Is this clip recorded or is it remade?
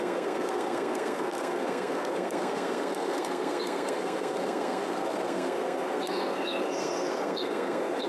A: remade